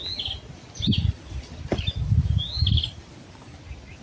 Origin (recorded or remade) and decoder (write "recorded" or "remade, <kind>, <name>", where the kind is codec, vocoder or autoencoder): recorded